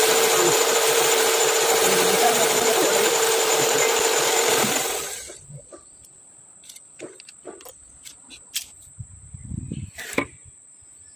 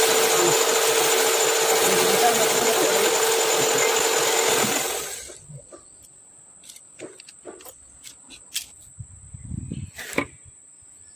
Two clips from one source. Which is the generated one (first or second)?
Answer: first